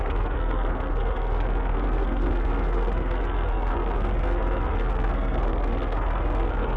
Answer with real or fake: fake